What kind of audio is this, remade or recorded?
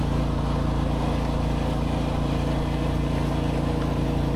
recorded